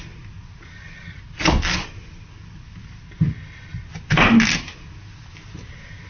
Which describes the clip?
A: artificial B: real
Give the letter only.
B